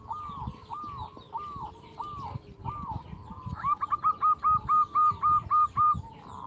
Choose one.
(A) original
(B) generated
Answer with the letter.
A